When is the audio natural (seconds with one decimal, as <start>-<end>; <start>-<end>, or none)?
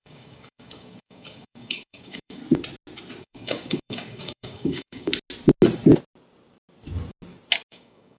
2.4-3.2; 5.1-7.7